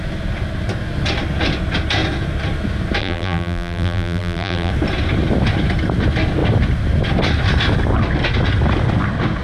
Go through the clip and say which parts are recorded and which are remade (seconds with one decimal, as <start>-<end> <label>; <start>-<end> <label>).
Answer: 0.0-3.0 recorded; 3.0-4.7 remade; 4.7-9.4 recorded